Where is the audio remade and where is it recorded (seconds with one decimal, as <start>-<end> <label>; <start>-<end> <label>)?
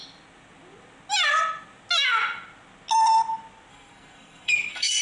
0.0-3.7 recorded; 3.7-5.0 remade